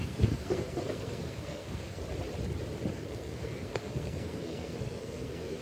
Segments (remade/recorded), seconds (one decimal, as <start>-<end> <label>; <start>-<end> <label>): 0.0-2.0 remade; 2.0-2.9 recorded; 2.9-5.6 remade